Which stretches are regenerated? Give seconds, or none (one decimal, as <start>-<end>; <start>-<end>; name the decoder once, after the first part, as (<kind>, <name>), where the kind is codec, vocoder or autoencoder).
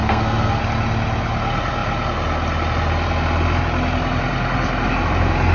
0.0-0.6 (codec, SNAC)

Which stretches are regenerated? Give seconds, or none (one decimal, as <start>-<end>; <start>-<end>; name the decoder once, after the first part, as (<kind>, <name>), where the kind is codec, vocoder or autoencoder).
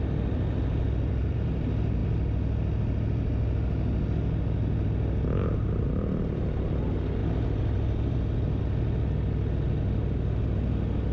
none